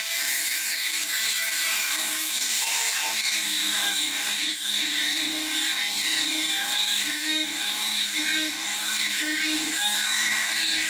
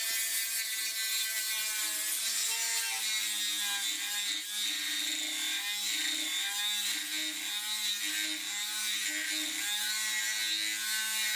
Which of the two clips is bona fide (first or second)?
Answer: second